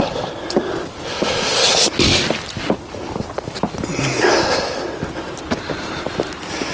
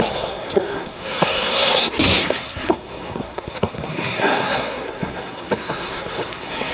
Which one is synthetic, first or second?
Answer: second